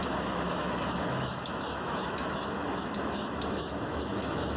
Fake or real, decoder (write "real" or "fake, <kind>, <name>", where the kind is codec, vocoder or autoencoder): fake, autoencoder, DAC-VAE